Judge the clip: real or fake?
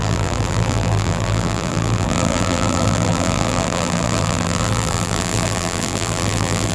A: fake